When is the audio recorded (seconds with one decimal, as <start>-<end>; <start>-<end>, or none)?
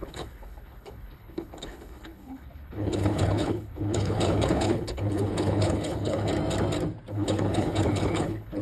6.3-7.1